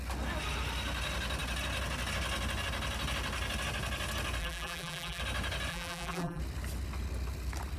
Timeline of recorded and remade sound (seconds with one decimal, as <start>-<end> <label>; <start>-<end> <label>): 0.0-4.4 recorded; 4.4-5.2 remade; 5.2-5.7 recorded; 5.7-6.4 remade; 6.4-7.8 recorded